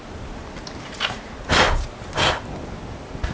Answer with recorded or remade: recorded